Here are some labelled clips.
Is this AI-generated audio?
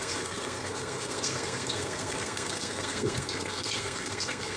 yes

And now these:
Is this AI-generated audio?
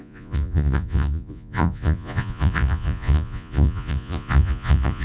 yes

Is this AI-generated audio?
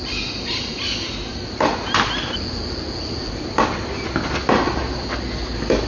no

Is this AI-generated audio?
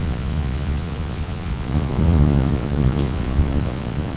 yes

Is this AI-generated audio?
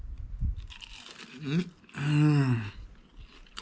no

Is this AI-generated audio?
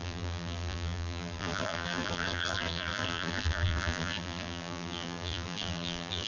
yes